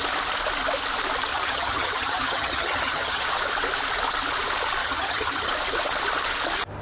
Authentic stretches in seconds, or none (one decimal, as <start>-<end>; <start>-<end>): 0.0-1.3; 3.3-4.8; 5.5-6.8